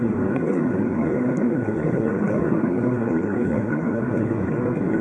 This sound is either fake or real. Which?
fake